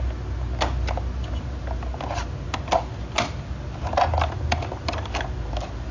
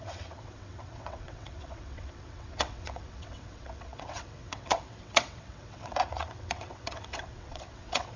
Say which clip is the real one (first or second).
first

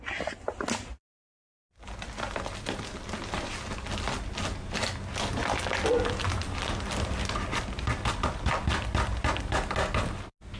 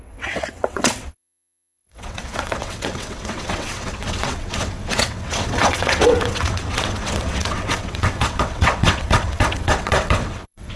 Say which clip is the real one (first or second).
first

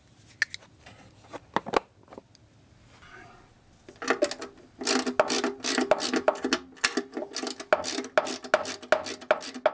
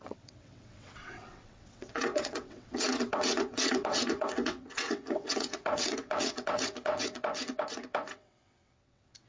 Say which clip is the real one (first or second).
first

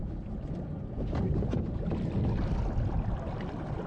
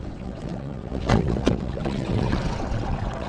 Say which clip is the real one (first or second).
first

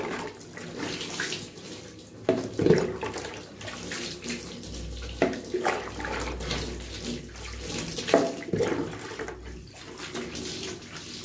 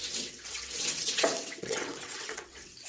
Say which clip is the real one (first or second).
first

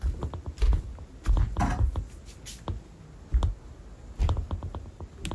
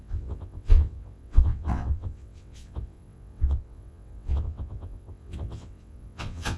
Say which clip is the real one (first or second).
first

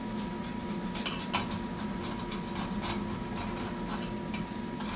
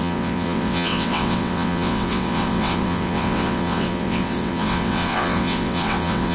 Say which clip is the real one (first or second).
first